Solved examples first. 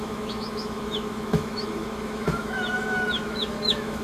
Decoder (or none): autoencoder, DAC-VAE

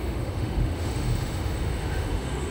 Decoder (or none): autoencoder, DAC-VAE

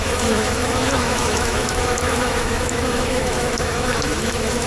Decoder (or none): autoencoder, DAC-VAE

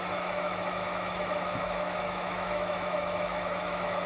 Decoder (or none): autoencoder, DAC-VAE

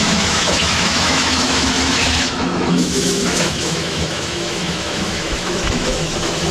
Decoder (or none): autoencoder, DAC-VAE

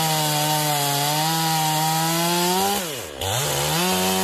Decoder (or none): none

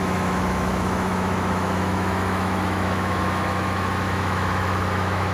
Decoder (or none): autoencoder, DAC-VAE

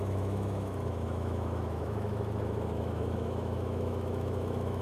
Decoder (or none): autoencoder, DAC-VAE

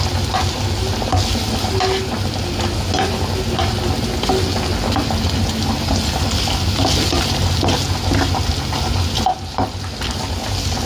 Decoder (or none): none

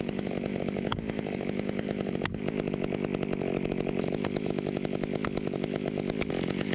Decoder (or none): autoencoder, DAC-VAE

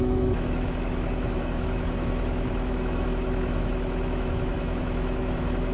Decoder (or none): autoencoder, DAC-VAE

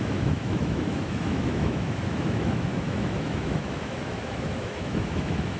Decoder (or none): autoencoder, DAC-VAE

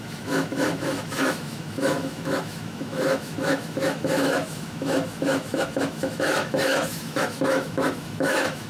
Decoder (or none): autoencoder, DAC-VAE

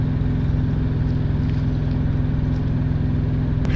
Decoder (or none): none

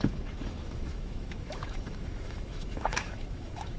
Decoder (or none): autoencoder, DAC-VAE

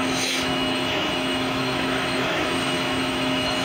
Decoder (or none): autoencoder, DAC-VAE